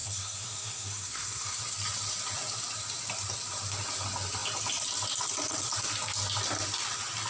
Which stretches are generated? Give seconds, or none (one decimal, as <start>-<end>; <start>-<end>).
0.0-1.6